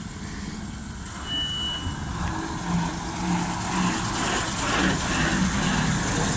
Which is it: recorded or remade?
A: recorded